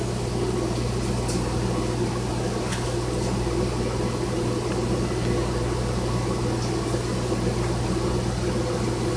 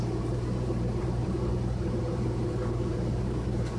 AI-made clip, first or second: second